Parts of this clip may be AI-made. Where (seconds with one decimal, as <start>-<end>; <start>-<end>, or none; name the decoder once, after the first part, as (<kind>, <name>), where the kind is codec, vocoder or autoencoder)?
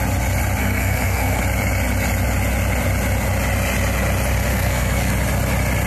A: 0.6-1.4 (codec, SNAC); 4.5-5.1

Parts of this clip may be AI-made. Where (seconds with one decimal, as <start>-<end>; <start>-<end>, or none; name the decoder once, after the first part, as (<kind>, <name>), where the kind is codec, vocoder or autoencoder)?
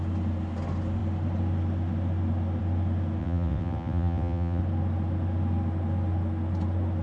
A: 3.2-4.6 (vocoder, WaveNeXt)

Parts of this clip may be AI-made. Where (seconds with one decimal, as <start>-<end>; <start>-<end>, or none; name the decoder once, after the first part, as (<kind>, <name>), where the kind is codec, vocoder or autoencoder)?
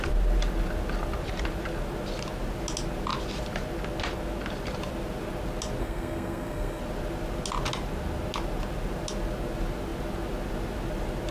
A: 5.8-6.8 (codec, SNAC)